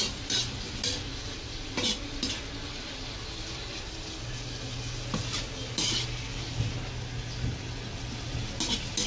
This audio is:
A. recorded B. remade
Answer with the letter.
A